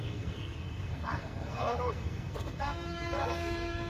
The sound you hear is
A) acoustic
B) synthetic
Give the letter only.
B